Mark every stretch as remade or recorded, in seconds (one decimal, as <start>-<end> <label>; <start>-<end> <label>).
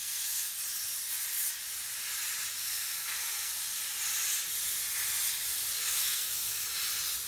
0.0-0.5 remade; 0.5-2.6 recorded; 2.6-3.8 remade; 3.8-5.8 recorded; 5.8-6.6 remade; 6.6-7.3 recorded